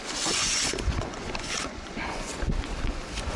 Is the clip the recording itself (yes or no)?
no